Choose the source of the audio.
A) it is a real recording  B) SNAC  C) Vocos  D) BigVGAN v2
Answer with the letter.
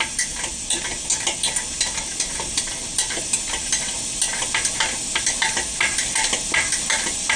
A